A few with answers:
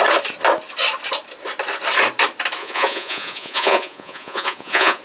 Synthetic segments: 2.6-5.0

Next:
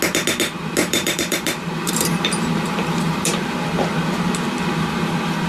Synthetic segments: 0.8-3.5

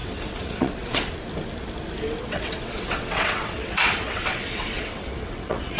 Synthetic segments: 0.0-1.1; 2.2-5.8